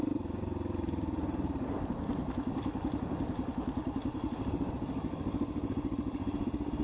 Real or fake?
fake